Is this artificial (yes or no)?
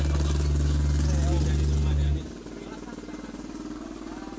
no